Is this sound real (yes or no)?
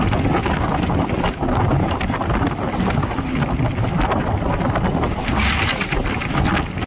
yes